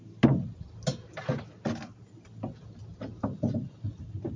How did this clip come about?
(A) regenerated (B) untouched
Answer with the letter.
B